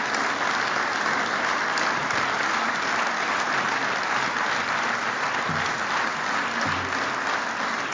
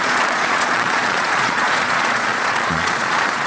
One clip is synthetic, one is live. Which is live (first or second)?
first